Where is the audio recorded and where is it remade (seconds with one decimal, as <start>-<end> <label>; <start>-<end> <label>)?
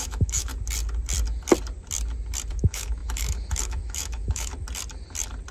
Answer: 0.0-0.5 remade; 0.5-2.5 recorded; 2.5-4.5 remade; 4.5-5.5 recorded